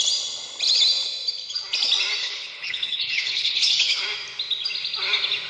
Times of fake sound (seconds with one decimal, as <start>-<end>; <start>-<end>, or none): 2.2-4.0

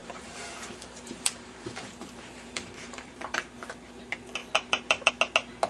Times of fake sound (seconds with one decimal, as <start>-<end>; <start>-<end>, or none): 0.0-3.4; 4.4-5.1

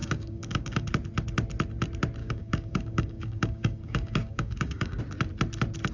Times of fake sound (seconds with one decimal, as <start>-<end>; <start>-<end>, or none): 0.0-0.9; 2.2-5.0

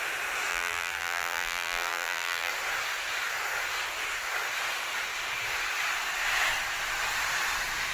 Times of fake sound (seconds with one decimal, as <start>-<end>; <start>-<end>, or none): 0.5-2.5

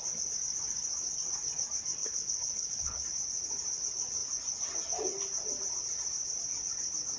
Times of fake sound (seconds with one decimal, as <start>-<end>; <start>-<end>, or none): 2.0-3.0

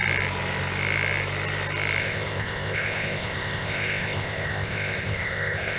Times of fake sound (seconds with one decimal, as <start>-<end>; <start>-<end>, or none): 2.0-5.8